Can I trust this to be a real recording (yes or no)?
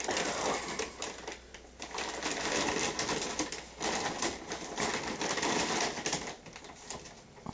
yes